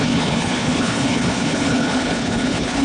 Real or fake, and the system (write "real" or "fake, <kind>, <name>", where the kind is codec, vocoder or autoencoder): fake, codec, HILCodec